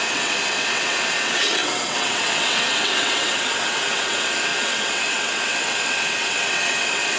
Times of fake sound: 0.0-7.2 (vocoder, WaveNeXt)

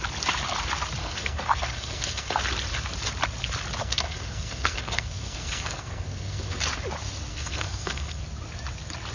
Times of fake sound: 1.0-2.4 (codec, SNAC); 3.8-6.6; 7.3-8.2

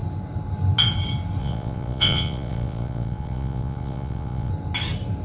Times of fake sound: 1.4-4.5 (vocoder, Vocos)

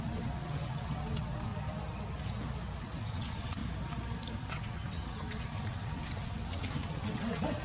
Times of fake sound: 0.0-1.5 (vocoder, WaveNeXt); 2.8-3.6; 4.5-7.6

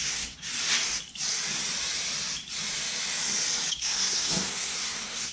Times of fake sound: 0.0-0.5 (codec, SNAC); 3.7-5.3

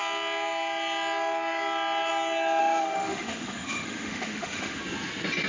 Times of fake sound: 2.6-4.8 (autoencoder, DAC-VAE)